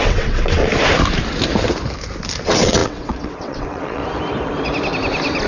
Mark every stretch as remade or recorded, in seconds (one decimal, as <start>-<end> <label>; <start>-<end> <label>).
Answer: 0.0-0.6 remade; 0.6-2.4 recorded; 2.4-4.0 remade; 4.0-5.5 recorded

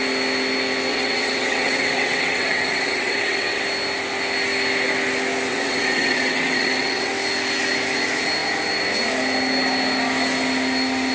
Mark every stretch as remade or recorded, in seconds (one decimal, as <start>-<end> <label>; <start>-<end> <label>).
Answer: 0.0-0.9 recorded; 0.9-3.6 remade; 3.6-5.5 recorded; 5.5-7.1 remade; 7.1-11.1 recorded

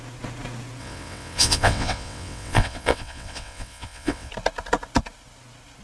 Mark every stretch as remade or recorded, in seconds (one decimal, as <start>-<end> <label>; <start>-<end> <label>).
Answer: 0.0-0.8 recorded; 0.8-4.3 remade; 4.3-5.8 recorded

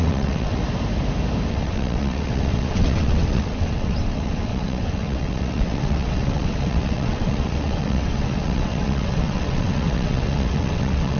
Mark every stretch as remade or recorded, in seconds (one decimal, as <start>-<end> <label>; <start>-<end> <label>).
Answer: 0.0-0.6 remade; 0.6-1.5 recorded; 1.5-11.2 remade

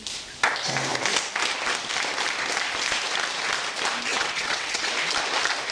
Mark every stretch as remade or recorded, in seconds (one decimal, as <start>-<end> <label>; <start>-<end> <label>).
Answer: 0.0-4.1 recorded; 4.1-4.9 remade; 4.9-5.7 recorded

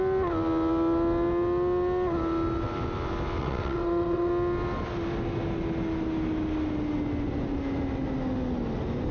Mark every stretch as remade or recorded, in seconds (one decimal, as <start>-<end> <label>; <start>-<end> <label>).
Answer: 0.0-3.4 recorded; 3.4-4.3 remade; 4.3-9.1 recorded

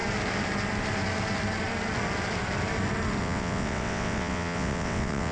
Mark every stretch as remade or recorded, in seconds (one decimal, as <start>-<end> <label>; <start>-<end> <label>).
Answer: 0.0-3.2 recorded; 3.2-5.3 remade